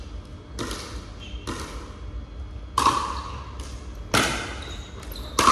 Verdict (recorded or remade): recorded